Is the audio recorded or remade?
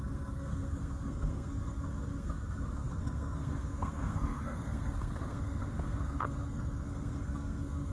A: remade